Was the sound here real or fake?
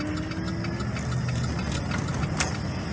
real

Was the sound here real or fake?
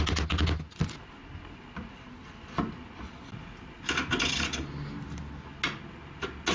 real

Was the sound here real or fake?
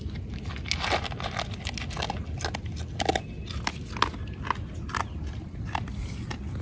real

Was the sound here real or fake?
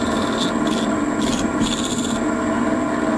real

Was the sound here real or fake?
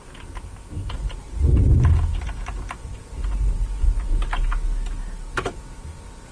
real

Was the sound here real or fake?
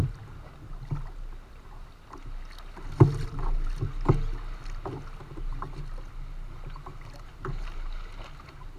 real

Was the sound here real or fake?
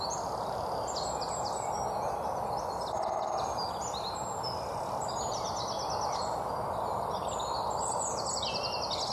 real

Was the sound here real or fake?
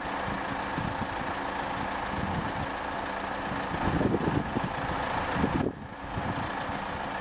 real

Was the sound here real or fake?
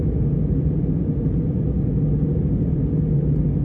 real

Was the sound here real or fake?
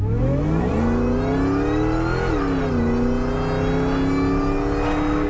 real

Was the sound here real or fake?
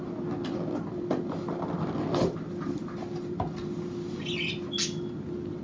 real